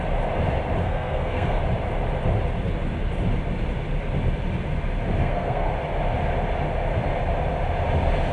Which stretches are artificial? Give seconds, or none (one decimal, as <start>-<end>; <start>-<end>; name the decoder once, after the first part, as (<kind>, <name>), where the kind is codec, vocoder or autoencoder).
0.8-1.6 (codec, SNAC); 5.2-5.7